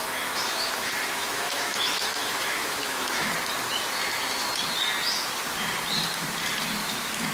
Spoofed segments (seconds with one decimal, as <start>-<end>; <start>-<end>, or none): 0.0-3.3